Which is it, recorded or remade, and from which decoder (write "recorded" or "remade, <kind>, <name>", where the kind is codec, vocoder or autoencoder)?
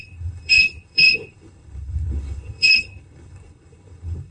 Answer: remade, codec, HILCodec